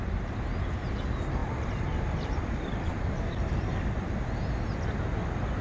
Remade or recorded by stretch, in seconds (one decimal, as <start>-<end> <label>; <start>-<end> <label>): 0.0-1.4 recorded; 1.4-3.9 remade; 3.9-5.6 recorded